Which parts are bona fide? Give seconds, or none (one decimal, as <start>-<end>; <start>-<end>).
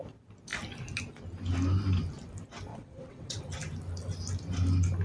0.0-2.7; 3.4-5.0